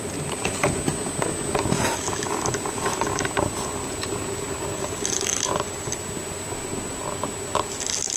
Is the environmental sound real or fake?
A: real